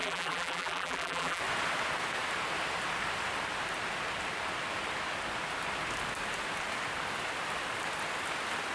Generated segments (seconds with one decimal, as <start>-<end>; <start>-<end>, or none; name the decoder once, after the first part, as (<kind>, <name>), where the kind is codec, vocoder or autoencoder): 0.0-1.4 (vocoder, BigVGAN v2)